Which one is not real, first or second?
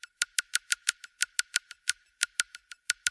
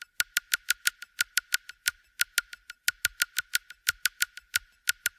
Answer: first